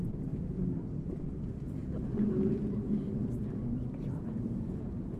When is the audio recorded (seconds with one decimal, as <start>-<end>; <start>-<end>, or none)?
0.0-5.2